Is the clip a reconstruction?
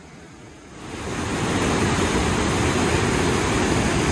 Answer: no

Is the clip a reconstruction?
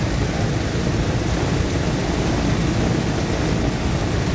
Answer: no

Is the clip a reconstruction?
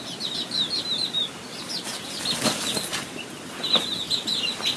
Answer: no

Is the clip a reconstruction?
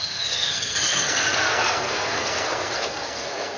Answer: yes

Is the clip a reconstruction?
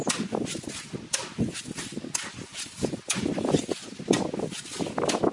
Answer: no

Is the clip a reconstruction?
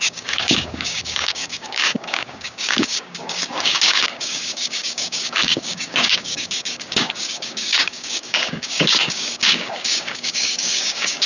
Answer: yes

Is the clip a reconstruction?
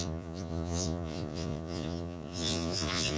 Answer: yes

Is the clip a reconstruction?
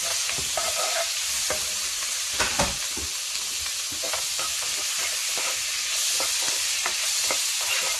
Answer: no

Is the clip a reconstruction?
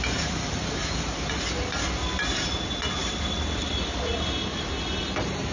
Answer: no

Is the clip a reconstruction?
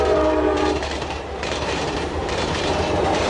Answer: yes